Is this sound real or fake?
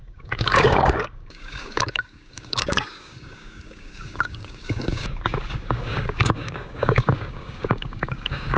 fake